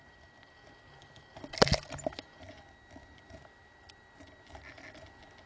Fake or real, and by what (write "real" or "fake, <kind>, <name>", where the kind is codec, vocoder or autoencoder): real